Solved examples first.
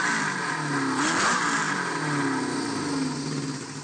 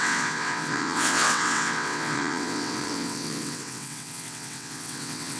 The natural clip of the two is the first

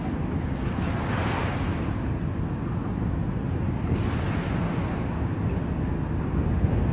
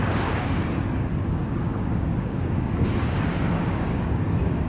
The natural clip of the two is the first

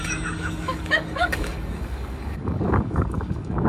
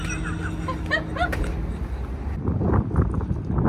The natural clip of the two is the second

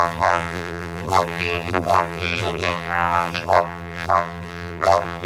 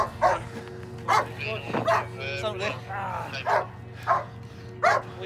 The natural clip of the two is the second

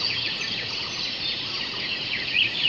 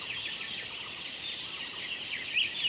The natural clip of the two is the second